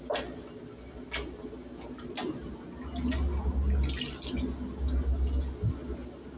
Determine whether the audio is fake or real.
real